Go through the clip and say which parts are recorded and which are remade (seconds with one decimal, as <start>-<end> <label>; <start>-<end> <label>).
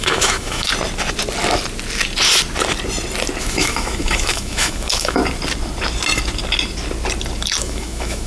0.0-0.7 remade; 0.7-3.4 recorded; 3.4-5.2 remade; 5.2-7.6 recorded; 7.6-8.3 remade